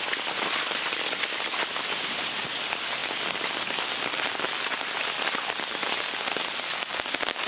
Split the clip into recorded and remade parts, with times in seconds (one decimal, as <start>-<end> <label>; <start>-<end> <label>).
0.0-7.5 recorded